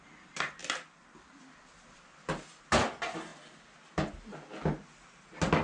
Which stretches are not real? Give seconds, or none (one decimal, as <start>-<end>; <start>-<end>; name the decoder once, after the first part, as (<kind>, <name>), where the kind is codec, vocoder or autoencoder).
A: none